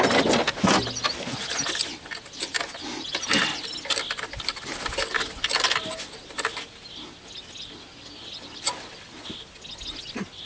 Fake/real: real